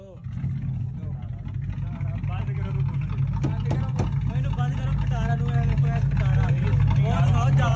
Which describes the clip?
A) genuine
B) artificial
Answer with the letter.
A